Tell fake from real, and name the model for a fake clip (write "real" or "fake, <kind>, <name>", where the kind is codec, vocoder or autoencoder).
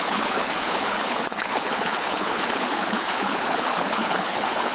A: fake, codec, HILCodec